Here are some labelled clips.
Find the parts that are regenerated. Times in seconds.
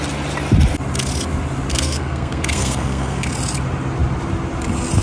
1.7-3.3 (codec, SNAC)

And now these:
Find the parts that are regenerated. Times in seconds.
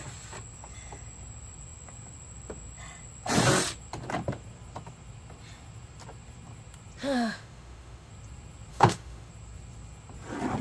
7.0-8.1 (autoencoder, DAC-VAE); 8.7-9.3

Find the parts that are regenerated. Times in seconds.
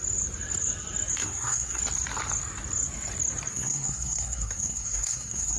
1.2-1.8 (codec, SNAC); 3.5-5.6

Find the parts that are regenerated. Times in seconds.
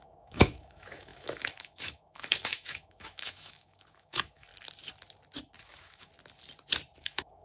0.0-4.5 (autoencoder, DAC-VAE); 5.6-6.1; 7.0-7.4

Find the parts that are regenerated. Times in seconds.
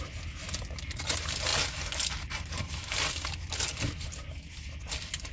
none